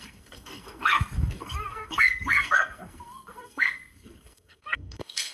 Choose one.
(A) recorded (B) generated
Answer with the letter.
B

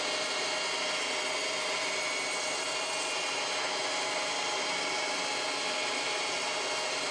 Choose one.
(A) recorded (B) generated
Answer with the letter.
A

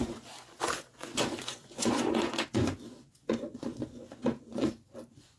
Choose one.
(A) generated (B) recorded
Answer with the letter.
A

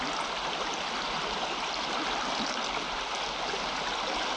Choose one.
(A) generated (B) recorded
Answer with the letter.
B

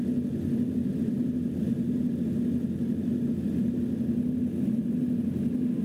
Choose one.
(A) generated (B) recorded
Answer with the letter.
B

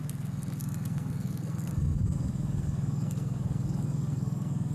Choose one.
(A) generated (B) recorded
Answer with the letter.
A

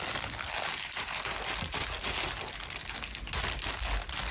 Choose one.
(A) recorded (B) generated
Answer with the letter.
A